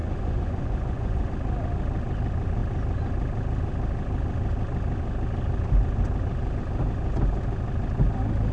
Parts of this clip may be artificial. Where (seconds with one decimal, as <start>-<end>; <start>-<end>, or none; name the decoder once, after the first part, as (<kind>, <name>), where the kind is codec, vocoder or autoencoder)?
0.0-1.3 (vocoder, Vocos)